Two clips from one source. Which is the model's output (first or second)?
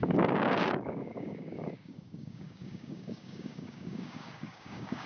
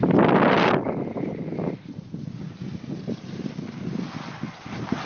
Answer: first